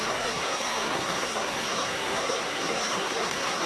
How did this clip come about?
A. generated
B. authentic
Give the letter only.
A